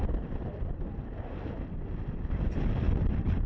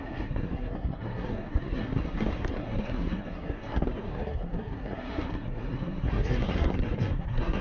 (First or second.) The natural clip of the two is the first